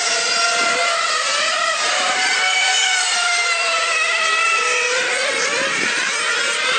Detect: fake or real fake